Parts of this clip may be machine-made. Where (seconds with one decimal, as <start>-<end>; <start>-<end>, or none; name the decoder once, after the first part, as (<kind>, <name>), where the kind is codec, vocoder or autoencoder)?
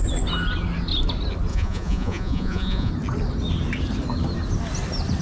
1.5-2.9 (vocoder, Vocos)